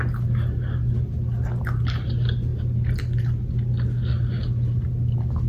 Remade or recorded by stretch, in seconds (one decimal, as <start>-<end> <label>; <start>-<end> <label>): 0.0-5.5 recorded